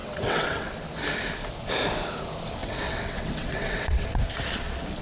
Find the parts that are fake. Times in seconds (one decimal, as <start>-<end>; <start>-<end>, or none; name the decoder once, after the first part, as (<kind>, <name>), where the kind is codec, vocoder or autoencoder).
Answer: 0.0-0.7 (vocoder, WaveNeXt); 2.6-4.2